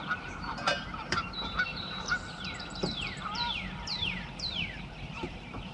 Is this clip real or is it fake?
fake